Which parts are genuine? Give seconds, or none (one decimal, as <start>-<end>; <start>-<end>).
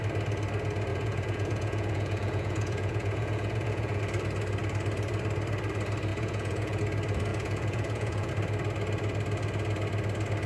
0.0-0.9; 4.0-6.1; 6.8-7.3; 8.3-10.5